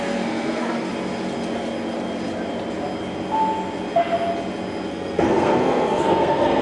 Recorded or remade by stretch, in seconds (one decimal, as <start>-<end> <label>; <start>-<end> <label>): 0.0-0.9 remade; 0.9-4.9 recorded; 4.9-6.6 remade